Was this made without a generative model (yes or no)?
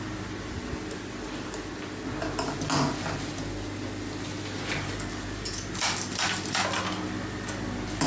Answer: yes